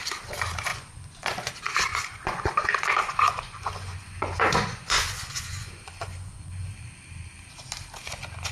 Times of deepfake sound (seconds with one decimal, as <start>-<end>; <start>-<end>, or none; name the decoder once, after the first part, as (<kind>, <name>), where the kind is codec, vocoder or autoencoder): 0.7-1.5 (vocoder, Vocos); 1.9-6.7

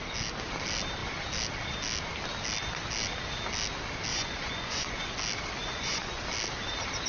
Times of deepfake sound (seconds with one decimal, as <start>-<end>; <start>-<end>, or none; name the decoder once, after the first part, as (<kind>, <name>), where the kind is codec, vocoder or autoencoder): 4.1-5.1 (vocoder, Vocos); 5.6-6.2

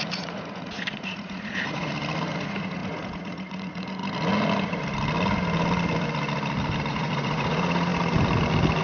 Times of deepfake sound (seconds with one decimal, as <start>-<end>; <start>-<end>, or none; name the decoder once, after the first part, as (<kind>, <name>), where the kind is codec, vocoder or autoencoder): 0.0-1.9 (vocoder, Vocos); 2.4-4.0; 6.9-7.9

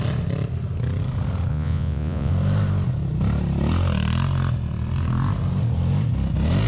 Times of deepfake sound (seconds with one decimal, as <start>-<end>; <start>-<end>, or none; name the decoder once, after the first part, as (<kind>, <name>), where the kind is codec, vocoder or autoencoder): 1.5-2.3 (vocoder, Vocos)

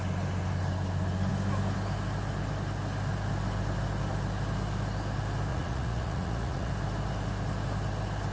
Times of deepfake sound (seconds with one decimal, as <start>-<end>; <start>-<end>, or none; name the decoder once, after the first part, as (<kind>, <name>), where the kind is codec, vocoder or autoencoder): 5.5-6.7 (vocoder, Vocos)

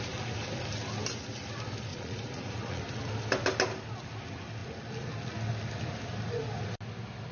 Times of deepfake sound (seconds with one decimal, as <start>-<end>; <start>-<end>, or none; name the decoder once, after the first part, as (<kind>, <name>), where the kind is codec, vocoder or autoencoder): 1.9-2.8 (vocoder, Vocos)